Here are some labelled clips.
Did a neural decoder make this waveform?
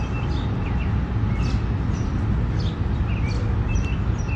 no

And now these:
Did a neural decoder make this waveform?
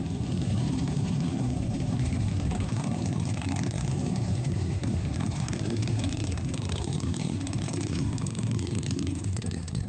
yes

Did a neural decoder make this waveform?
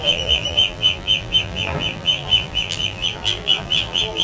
yes